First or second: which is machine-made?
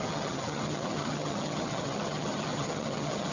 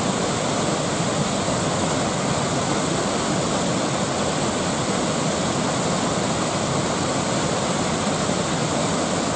first